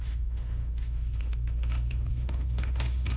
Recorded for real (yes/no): no